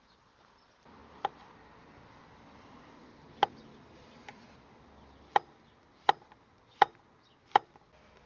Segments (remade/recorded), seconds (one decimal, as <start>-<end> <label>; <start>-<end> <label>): 0.0-3.7 recorded; 3.7-4.4 remade; 4.4-5.9 recorded; 5.9-7.8 remade; 7.8-8.3 recorded